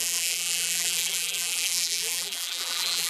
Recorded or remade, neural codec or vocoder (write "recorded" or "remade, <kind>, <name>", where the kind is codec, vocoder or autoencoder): remade, vocoder, BigVGAN v2